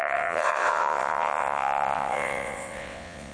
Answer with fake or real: fake